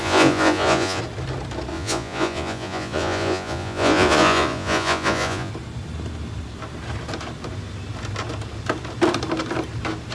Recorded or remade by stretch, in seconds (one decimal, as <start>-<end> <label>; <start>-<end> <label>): 0.0-1.0 remade; 1.0-1.7 recorded; 1.7-5.5 remade; 5.5-10.1 recorded